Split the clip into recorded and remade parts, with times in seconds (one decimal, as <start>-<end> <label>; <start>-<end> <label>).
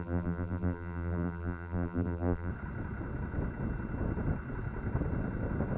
0.0-2.5 remade; 2.5-5.8 recorded